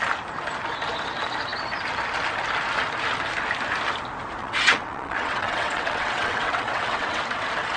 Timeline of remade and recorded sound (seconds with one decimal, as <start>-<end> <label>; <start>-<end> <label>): 0.0-4.4 recorded; 4.4-7.2 remade; 7.2-7.8 recorded